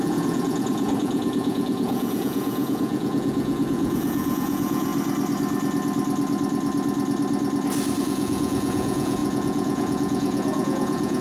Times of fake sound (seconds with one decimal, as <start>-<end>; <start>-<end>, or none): 0.0-4.9; 8.0-11.2